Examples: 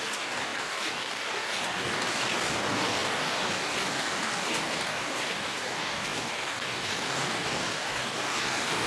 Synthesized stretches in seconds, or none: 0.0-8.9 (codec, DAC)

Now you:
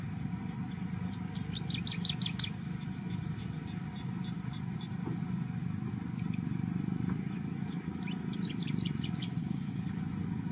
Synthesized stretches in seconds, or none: 9.4-10.0 (codec, HILCodec)

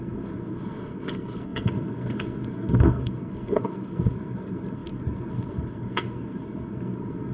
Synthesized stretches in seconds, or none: 0.0-7.3 (codec, SNAC)

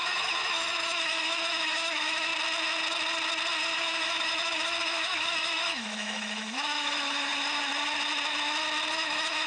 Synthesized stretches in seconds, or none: 0.0-2.3 (autoencoder, DAC-VAE); 3.8-7.3; 8.9-9.5

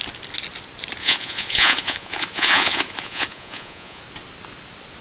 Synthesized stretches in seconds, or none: 1.0-4.0 (vocoder, Vocos)

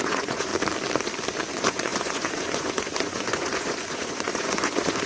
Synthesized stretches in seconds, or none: 0.0-0.5 (vocoder, Vocos); 1.5-5.1

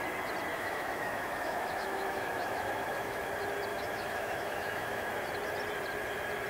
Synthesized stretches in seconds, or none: 0.5-3.3 (autoencoder, DAC-VAE); 3.7-5.1